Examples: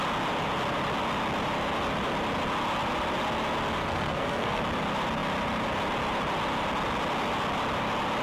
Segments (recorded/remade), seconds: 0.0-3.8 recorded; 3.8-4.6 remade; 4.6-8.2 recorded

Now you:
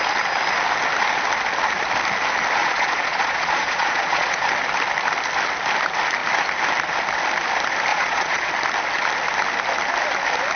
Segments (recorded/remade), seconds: 0.0-2.6 recorded; 2.6-4.5 remade; 4.5-7.9 recorded; 7.9-8.5 remade; 8.5-10.6 recorded

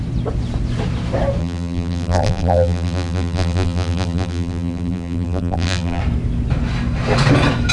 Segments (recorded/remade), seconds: 0.0-1.4 recorded; 1.4-6.0 remade; 6.0-7.7 recorded

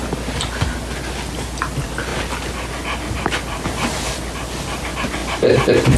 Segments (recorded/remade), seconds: 0.0-6.0 recorded